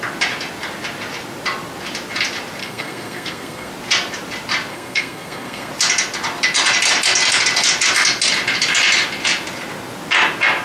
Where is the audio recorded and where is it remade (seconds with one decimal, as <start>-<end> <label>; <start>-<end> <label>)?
0.0-2.6 recorded; 2.6-3.7 remade; 3.7-4.7 recorded; 4.7-5.7 remade; 5.7-10.6 recorded